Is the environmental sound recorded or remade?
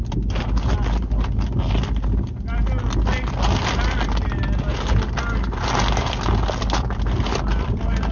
recorded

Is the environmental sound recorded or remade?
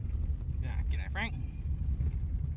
recorded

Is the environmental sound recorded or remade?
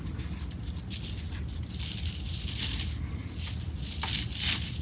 recorded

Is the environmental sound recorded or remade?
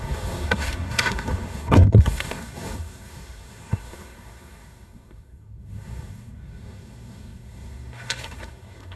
remade